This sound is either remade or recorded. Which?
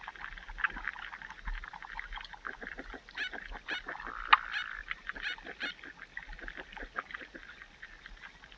recorded